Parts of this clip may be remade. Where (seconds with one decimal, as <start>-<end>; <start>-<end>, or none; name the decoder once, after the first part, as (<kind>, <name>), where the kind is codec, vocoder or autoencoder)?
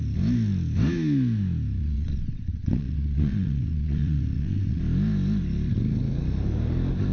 1.8-4.8 (vocoder, WaveNeXt)